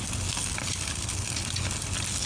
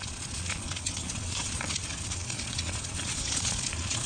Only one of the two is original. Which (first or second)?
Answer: first